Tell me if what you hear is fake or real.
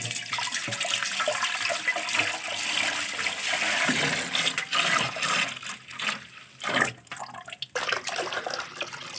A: real